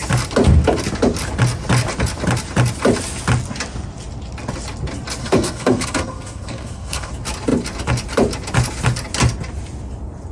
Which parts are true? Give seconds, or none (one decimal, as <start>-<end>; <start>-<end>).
0.0-5.2; 7.1-10.3